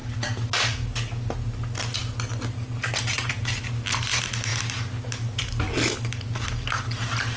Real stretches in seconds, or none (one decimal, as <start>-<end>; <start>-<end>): 0.0-7.4